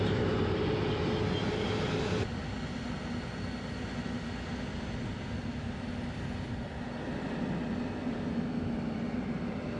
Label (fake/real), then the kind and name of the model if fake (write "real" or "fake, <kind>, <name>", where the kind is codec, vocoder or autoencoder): real